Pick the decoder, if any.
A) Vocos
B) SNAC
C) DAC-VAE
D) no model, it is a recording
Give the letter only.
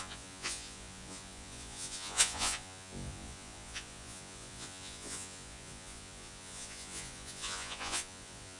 A